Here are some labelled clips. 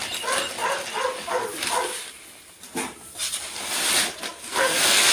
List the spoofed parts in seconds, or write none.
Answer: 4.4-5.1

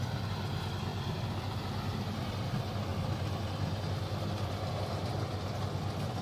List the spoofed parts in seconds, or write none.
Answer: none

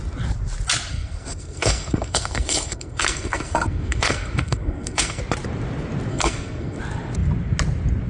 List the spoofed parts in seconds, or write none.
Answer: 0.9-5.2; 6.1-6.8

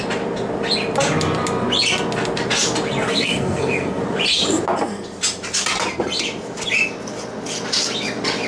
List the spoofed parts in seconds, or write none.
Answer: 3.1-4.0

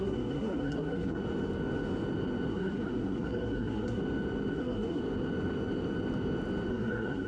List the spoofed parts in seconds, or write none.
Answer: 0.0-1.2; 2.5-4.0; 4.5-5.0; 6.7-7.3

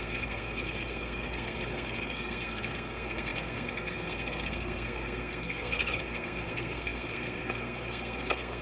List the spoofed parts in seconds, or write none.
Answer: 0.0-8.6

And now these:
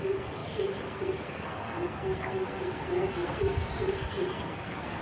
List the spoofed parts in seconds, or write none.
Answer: 0.0-5.0